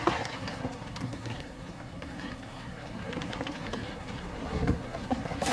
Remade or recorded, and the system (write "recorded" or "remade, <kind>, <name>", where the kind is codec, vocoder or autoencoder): remade, codec, SNAC